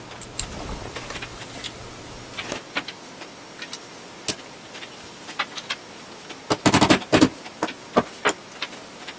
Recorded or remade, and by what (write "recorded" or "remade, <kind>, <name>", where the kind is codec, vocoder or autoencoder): recorded